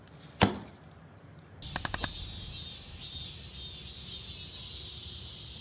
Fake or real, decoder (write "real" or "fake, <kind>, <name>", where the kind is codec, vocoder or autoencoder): real